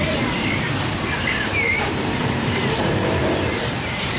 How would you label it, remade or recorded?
remade